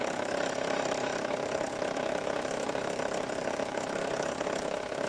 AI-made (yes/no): yes